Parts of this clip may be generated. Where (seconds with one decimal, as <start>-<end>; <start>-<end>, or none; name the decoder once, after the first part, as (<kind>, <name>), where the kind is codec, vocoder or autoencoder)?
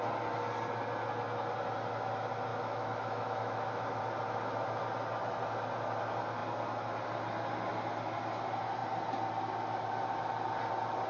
2.5-4.0 (autoencoder, DAC-VAE)